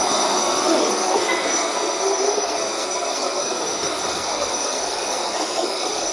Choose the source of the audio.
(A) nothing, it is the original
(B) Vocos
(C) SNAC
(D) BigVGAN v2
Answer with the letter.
C